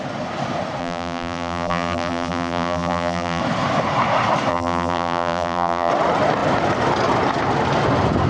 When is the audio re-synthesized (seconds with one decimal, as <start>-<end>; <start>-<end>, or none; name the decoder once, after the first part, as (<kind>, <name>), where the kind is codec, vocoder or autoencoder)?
0.8-3.4 (vocoder, BigVGAN v2); 4.5-5.9